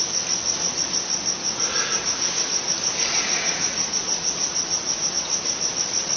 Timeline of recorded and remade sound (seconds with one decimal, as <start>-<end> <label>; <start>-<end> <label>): 0.0-1.4 recorded; 1.4-5.1 remade; 5.1-6.2 recorded